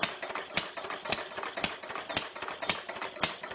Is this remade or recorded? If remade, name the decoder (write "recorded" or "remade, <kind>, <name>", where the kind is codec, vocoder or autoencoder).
recorded